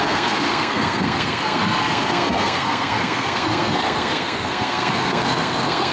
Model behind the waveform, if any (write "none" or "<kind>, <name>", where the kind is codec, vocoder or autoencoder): codec, SNAC